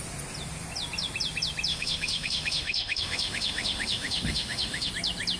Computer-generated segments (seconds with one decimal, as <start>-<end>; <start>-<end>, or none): 1.7-4.9